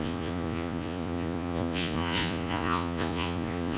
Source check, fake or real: fake